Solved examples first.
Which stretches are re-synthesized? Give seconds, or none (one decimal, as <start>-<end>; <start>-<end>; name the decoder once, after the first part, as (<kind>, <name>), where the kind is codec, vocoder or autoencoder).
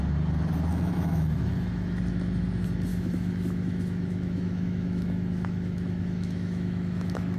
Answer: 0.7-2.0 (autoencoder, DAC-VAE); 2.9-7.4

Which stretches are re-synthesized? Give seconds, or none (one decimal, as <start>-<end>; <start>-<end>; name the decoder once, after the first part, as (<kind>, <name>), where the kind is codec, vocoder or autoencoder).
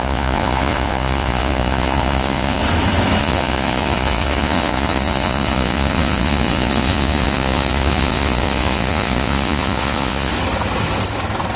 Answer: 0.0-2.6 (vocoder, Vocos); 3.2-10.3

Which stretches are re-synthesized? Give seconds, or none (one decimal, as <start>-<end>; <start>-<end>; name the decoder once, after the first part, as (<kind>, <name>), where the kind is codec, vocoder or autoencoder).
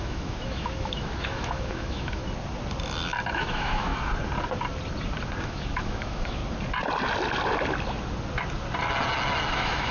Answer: 0.0-2.2 (autoencoder, DAC-VAE); 3.3-3.9; 5.4-6.4; 9.5-9.9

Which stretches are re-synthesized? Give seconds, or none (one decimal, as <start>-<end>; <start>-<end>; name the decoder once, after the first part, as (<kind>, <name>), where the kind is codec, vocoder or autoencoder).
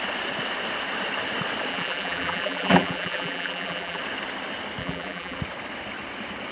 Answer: 1.7-4.0 (vocoder, BigVGAN v2); 4.8-5.4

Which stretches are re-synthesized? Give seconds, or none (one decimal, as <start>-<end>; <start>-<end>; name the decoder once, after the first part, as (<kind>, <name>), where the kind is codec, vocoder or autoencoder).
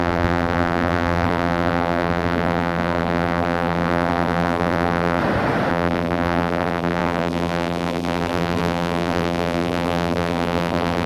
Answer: 0.0-5.2 (vocoder, BigVGAN v2); 5.7-11.1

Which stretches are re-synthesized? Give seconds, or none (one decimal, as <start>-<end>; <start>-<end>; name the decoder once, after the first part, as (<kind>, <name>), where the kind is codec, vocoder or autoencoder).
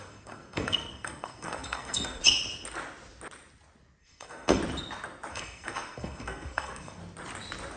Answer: 0.0-2.2 (codec, SNAC); 4.0-4.6; 5.3-7.0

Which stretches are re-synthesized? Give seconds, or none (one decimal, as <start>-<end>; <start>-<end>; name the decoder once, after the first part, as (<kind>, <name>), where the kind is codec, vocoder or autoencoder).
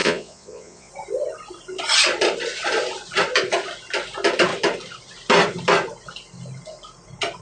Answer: 0.0-0.9 (vocoder, Vocos)